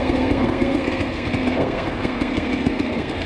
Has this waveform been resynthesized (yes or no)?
yes